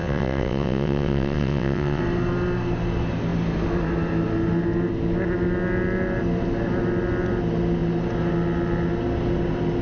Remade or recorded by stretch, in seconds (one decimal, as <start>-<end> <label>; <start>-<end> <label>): 0.0-2.0 remade; 2.0-9.8 recorded